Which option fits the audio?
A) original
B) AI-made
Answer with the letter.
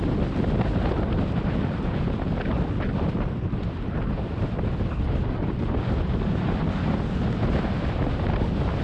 A